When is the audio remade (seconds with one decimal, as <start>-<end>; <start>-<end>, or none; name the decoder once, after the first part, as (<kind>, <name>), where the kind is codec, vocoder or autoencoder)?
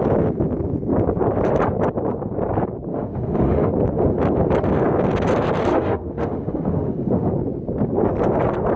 2.9-3.7 (autoencoder, DAC-VAE); 5.7-7.3